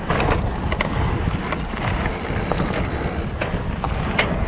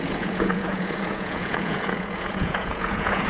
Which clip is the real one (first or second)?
first